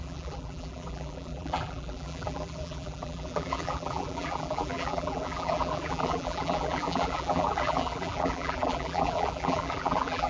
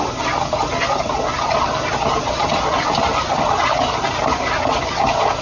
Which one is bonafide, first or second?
second